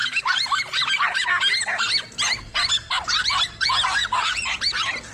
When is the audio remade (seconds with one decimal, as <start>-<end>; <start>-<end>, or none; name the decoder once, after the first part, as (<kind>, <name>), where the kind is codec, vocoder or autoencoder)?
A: 4.0-4.5 (vocoder, Vocos)